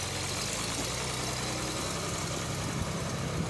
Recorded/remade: recorded